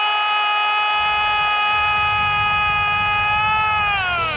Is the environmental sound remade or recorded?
recorded